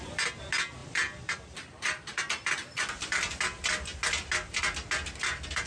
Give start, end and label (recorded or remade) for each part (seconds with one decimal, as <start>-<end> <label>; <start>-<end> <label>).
0.0-0.8 recorded; 0.8-3.4 remade; 3.4-5.7 recorded